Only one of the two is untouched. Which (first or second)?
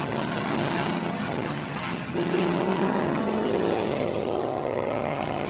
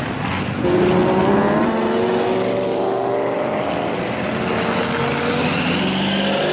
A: second